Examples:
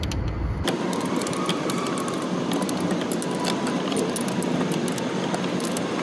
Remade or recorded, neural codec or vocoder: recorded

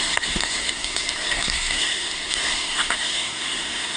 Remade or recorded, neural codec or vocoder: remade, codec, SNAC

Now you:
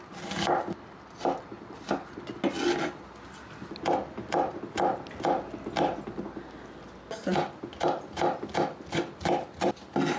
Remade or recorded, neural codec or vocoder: recorded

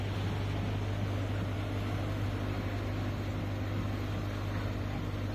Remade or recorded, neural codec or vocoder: recorded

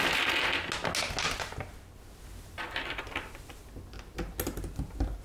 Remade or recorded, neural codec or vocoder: recorded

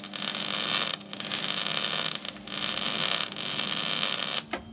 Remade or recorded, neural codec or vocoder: recorded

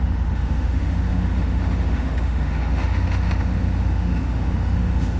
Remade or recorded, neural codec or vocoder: remade, autoencoder, DAC-VAE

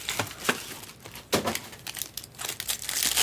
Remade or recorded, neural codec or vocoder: recorded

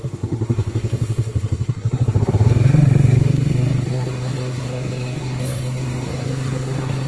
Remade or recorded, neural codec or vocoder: remade, codec, SNAC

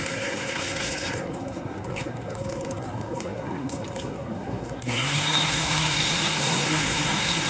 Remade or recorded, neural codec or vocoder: remade, codec, SNAC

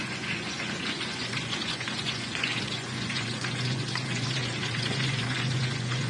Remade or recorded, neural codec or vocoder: remade, vocoder, Vocos